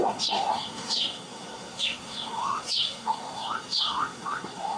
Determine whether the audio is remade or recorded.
remade